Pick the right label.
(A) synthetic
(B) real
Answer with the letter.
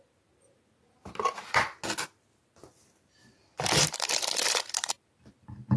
B